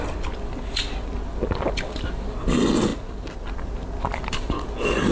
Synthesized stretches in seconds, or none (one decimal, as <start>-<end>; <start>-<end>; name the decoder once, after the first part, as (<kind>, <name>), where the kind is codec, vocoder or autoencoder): none